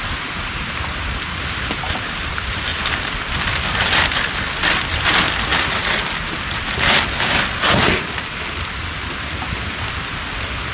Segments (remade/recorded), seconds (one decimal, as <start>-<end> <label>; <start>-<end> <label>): 0.0-10.7 recorded